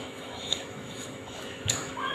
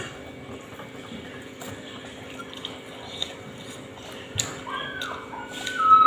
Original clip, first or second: second